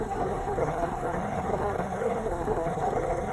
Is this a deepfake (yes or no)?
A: yes